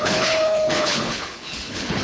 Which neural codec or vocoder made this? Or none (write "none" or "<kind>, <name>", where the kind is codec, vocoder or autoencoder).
codec, HILCodec